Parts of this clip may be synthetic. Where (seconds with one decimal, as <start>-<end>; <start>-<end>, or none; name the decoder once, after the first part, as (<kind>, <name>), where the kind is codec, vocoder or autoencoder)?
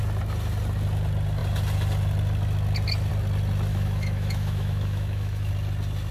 3.7-5.5 (autoencoder, DAC-VAE)